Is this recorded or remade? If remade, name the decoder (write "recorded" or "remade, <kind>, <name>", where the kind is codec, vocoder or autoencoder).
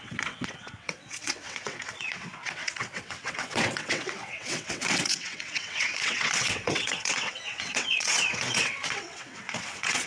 remade, vocoder, WaveNeXt